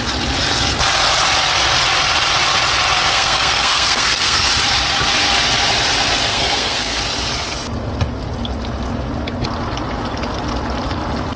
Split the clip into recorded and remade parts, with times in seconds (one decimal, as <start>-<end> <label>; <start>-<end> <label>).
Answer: 0.0-3.1 recorded; 3.1-4.5 remade; 4.5-6.3 recorded; 6.3-7.0 remade; 7.0-11.4 recorded